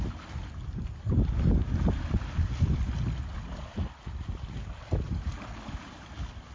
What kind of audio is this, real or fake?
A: real